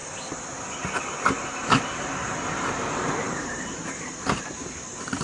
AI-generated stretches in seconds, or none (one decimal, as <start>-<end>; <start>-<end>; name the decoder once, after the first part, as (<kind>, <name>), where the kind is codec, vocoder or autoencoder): 2.0-5.2 (vocoder, BigVGAN v2)